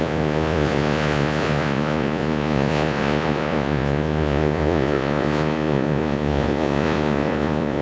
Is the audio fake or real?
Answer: fake